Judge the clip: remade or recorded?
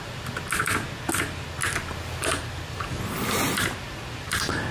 recorded